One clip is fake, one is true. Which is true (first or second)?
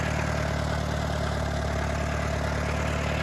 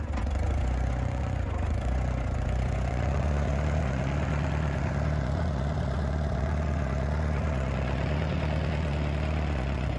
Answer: first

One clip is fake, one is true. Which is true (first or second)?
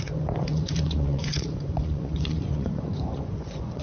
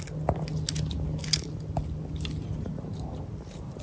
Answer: second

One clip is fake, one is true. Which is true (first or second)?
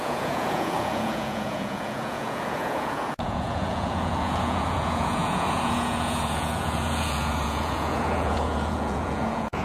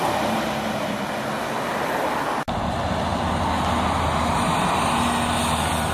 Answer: second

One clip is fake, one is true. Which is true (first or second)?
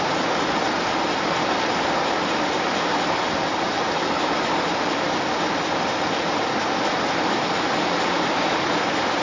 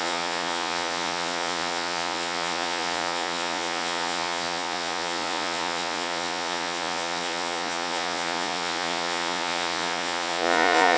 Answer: first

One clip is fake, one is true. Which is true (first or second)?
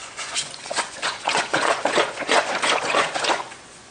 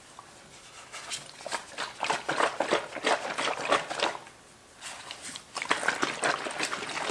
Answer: second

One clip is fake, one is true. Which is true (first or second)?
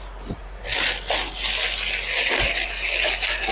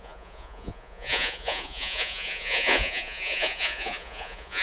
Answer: first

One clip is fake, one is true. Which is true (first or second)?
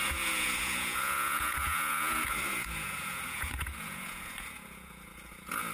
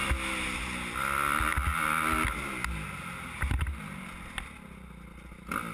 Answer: second